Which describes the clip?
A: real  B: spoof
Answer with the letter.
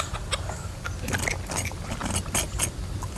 A